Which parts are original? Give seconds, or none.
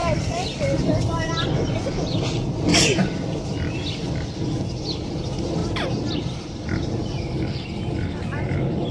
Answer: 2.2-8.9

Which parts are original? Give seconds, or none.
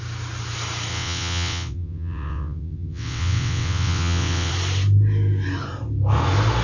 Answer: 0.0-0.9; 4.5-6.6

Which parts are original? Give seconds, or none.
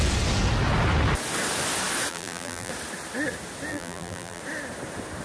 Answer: 0.0-2.1; 2.7-3.7; 4.4-5.2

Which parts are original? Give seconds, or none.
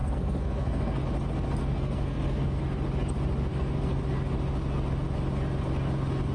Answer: 1.0-1.6; 2.6-3.5; 4.0-6.3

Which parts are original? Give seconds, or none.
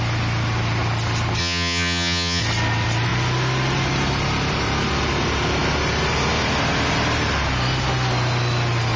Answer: 0.0-1.4; 2.4-9.0